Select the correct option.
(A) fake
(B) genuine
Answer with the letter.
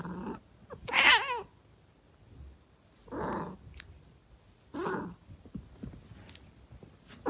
B